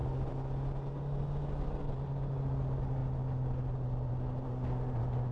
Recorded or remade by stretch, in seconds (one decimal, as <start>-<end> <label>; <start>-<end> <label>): 0.0-5.3 recorded